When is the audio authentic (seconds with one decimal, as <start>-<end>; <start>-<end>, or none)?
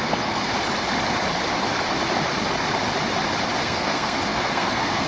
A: 0.5-3.6